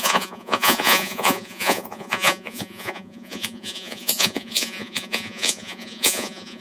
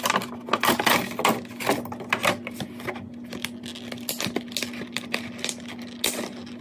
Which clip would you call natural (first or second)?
second